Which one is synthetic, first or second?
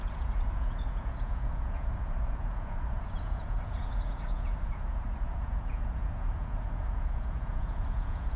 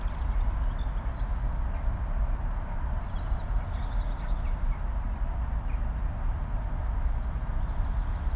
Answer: first